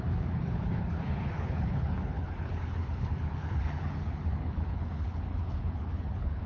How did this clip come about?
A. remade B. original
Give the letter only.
A